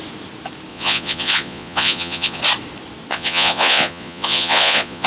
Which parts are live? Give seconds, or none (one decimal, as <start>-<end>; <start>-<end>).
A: 0.0-0.7; 2.4-3.1